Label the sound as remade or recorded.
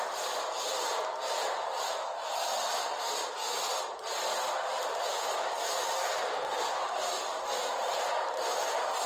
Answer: remade